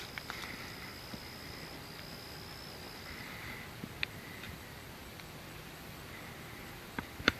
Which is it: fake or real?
real